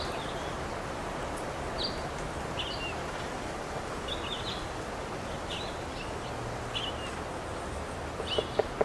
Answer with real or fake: real